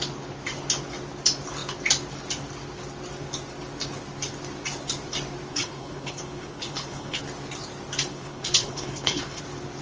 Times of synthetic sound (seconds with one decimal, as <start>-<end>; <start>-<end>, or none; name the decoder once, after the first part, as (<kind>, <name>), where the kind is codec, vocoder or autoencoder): 5.5-7.2 (codec, HILCodec); 8.1-9.4